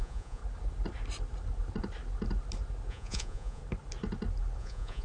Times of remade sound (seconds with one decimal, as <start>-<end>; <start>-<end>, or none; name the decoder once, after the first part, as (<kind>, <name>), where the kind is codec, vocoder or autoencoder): 0.0-0.4 (vocoder, Vocos); 2.9-3.6; 4.6-5.0